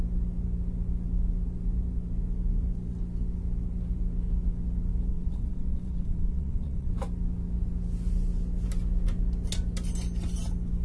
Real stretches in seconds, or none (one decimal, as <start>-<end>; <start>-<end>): 0.0-5.1; 6.9-10.8